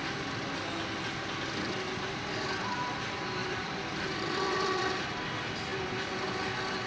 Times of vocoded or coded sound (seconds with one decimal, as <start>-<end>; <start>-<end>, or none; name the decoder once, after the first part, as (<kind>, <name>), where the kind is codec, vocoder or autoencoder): 3.4-5.0 (vocoder, BigVGAN v2)